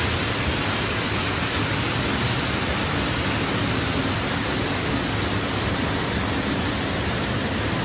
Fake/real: real